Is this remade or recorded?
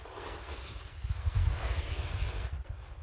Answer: remade